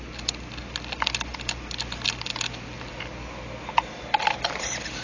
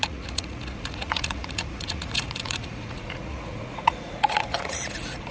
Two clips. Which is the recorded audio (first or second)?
first